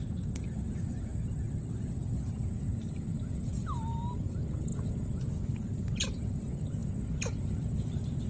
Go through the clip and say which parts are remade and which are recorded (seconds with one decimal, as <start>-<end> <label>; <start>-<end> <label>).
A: 0.0-8.3 recorded